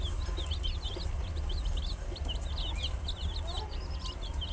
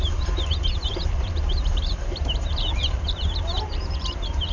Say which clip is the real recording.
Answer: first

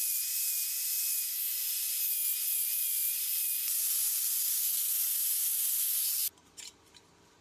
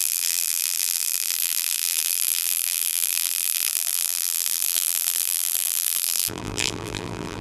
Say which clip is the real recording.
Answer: first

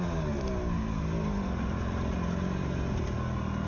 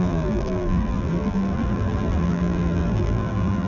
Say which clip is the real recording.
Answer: first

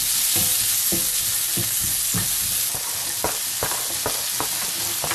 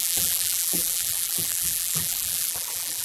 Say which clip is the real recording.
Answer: first